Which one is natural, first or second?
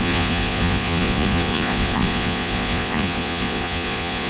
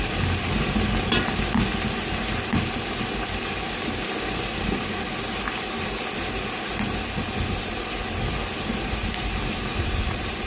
second